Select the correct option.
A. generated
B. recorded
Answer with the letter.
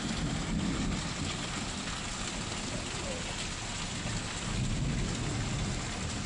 B